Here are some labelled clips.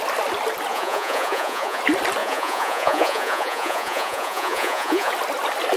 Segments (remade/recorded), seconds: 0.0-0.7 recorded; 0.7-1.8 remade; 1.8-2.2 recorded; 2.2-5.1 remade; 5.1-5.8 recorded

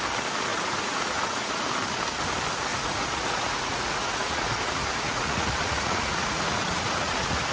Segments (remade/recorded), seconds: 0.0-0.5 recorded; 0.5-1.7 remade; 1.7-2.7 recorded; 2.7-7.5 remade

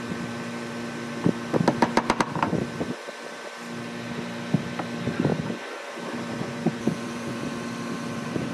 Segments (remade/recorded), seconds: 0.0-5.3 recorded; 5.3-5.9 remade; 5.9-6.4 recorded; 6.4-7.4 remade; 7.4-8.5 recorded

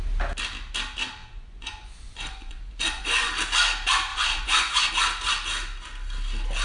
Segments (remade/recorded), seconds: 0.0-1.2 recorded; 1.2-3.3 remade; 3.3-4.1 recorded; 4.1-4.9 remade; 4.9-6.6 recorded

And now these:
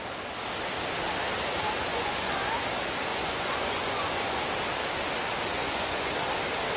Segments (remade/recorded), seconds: 0.0-1.9 recorded; 1.9-2.5 remade; 2.5-3.1 recorded; 3.1-4.4 remade; 4.4-5.6 recorded; 5.6-6.1 remade; 6.1-6.8 recorded